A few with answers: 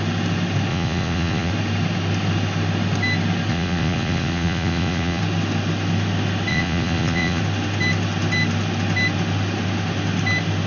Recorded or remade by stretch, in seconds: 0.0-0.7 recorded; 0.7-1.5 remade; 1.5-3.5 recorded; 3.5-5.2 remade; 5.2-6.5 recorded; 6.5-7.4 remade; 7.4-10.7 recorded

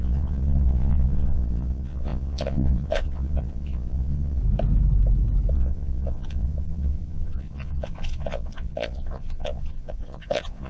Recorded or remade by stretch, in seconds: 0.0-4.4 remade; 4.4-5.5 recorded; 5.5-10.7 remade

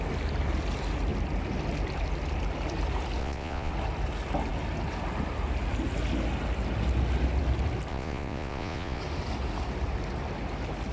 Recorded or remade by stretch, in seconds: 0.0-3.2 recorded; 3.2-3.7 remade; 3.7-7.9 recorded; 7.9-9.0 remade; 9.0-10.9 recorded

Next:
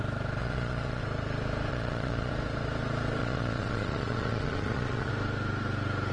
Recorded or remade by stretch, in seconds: 0.0-0.4 recorded; 0.4-1.0 remade; 1.0-1.7 recorded; 1.7-2.3 remade; 2.3-3.2 recorded; 3.2-5.1 remade; 5.1-6.1 recorded

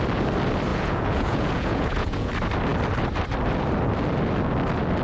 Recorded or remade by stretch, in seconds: 0.0-0.7 recorded; 0.7-2.3 remade; 2.3-5.0 recorded

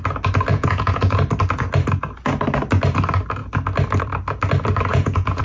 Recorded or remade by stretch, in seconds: 0.0-0.5 recorded; 0.5-1.2 remade; 1.2-4.9 recorded; 4.9-5.4 remade